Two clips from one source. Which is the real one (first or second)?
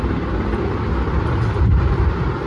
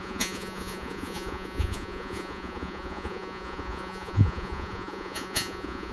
first